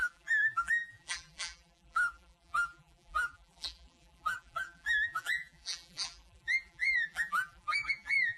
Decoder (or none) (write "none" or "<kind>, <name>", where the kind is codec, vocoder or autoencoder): vocoder, BigVGAN v2